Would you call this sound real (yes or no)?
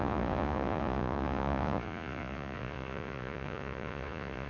no